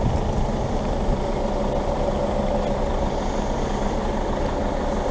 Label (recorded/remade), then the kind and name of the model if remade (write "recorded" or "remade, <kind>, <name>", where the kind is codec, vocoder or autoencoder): recorded